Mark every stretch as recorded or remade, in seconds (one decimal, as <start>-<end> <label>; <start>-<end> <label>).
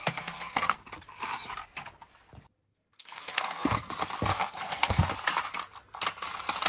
0.0-0.8 remade; 0.8-2.6 recorded; 2.6-3.9 remade; 3.9-4.3 recorded; 4.3-5.0 remade; 5.0-6.7 recorded